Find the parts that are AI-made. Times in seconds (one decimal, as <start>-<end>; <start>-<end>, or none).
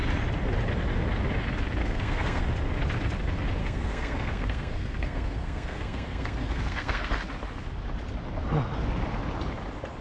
1.8-2.4; 3.6-7.1